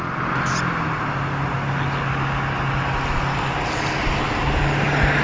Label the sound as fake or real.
real